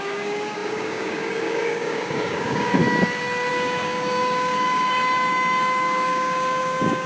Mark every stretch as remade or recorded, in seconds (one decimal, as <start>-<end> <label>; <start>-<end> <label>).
0.0-2.8 remade; 2.8-3.5 recorded; 3.5-7.1 remade